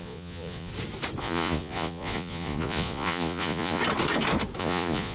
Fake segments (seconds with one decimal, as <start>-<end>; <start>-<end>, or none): 0.0-0.7; 1.2-3.8; 4.6-5.1